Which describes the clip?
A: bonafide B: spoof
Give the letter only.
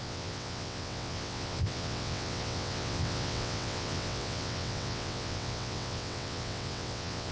B